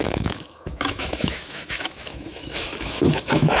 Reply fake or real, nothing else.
fake